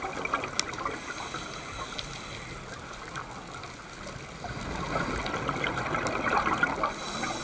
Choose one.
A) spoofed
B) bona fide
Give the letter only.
B